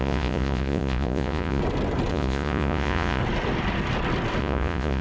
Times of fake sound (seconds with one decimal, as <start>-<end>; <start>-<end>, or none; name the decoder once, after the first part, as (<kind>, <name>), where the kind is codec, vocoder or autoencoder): 0.0-1.6 (vocoder, Vocos); 2.1-3.2; 4.4-5.0

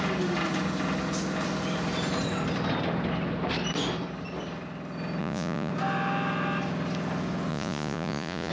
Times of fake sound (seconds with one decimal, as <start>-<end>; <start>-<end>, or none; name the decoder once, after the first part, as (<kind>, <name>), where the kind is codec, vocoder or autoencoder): 5.2-5.7 (vocoder, Vocos); 7.5-8.5

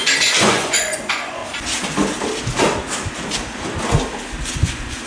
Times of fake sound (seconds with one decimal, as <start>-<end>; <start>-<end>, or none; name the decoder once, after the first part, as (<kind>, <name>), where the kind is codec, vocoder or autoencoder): 0.0-1.4 (vocoder, Vocos); 4.5-5.1

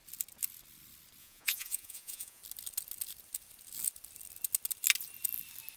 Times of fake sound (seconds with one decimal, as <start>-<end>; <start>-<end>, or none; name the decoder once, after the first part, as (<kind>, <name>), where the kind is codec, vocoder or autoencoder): 1.2-2.4 (vocoder, Vocos)

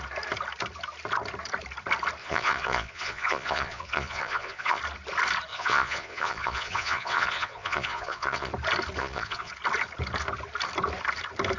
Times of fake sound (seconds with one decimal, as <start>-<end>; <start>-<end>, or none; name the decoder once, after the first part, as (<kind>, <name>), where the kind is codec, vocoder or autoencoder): 2.2-4.8 (vocoder, Vocos); 5.5-8.5; 9.0-9.5

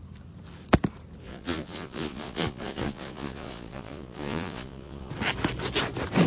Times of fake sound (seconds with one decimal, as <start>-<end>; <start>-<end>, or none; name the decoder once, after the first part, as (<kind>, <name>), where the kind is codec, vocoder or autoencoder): 1.3-5.1 (vocoder, Vocos)

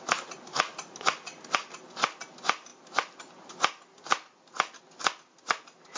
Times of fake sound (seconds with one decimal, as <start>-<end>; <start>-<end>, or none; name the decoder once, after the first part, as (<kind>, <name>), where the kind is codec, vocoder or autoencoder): none